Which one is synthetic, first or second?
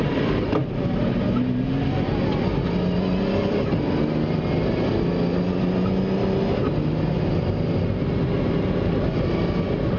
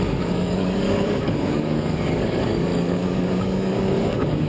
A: second